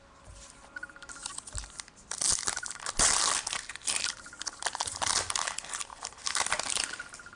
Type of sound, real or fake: real